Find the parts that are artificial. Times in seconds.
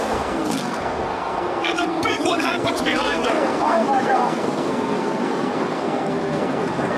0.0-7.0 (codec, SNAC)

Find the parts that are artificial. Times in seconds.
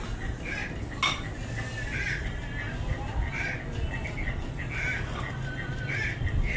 none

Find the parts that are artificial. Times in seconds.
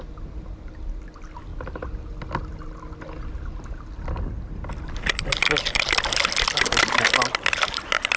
none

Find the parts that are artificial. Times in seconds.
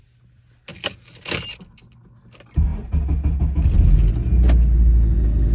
none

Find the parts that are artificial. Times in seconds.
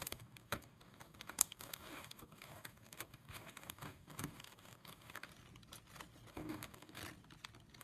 0.0-5.3 (codec, DAC); 6.3-7.0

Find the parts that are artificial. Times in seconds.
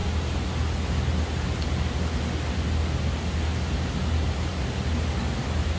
none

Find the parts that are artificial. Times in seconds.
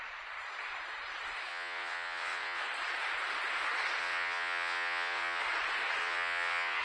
1.5-2.6 (vocoder, WaveNeXt); 4.0-5.4; 6.0-6.8